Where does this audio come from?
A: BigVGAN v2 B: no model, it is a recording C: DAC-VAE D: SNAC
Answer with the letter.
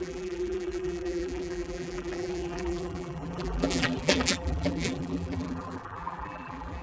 A